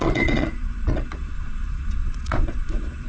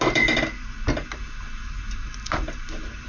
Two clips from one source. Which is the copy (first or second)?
first